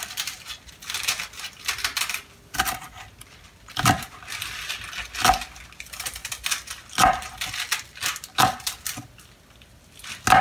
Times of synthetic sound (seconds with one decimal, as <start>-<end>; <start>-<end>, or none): none